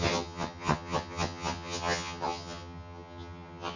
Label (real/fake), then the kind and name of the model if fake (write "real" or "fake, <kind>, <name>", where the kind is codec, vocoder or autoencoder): fake, vocoder, HiFi-GAN